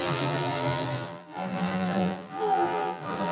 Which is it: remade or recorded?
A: remade